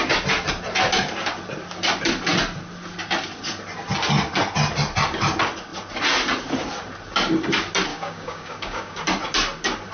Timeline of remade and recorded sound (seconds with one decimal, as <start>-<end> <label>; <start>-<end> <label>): 0.0-7.9 recorded; 7.9-9.0 remade; 9.0-9.9 recorded